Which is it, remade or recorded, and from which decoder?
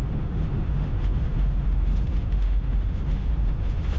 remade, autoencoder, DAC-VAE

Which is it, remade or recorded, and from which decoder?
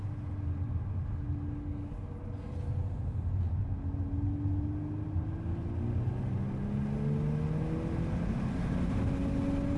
recorded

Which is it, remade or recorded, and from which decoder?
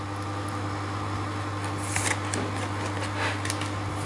recorded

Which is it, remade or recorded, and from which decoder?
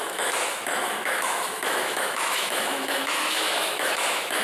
remade, autoencoder, DAC-VAE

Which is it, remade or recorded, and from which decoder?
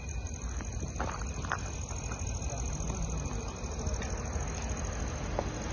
recorded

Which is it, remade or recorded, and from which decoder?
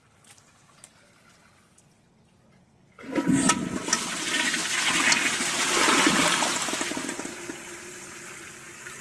recorded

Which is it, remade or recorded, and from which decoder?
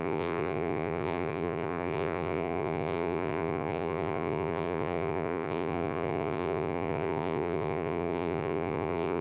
remade, vocoder, Vocos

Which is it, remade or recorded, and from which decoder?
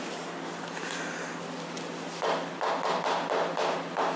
recorded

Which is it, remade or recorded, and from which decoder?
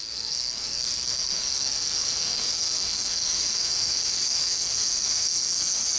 remade, codec, SNAC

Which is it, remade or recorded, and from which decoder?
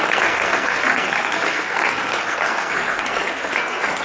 remade, codec, SNAC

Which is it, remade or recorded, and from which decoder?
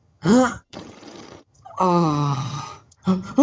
remade, vocoder, HiFi-GAN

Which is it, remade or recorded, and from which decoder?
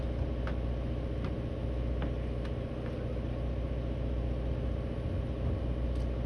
recorded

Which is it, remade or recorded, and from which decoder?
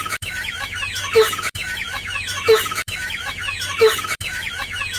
remade, autoencoder, DAC-VAE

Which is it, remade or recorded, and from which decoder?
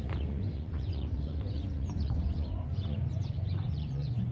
remade, vocoder, Vocos